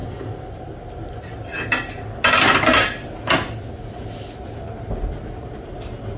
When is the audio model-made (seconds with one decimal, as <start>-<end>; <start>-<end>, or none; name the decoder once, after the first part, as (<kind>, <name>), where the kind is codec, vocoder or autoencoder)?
none